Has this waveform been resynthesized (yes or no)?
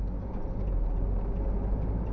no